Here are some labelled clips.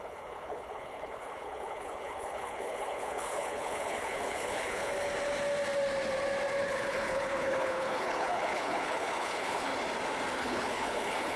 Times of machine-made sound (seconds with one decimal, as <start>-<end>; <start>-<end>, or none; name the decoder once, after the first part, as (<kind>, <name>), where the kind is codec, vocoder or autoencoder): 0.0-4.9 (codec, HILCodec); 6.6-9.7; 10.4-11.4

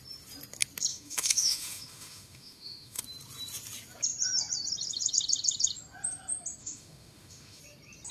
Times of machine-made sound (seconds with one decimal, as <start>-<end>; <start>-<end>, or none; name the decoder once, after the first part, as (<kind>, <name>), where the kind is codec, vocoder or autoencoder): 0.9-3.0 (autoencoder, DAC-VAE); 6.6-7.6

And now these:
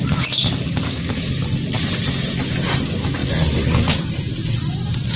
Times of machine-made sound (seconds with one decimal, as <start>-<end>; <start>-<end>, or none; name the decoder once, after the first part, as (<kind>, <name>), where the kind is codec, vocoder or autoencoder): none

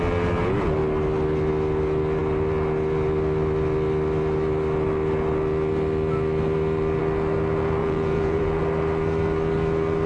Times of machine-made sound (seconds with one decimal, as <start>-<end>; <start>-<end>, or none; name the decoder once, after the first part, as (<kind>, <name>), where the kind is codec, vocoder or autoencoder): 7.8-8.6 (vocoder, Vocos)

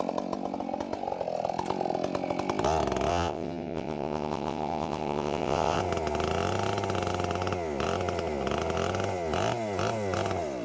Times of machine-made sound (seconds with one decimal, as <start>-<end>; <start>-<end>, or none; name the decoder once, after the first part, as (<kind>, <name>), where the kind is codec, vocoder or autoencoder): 3.1-5.8 (vocoder, WaveNeXt)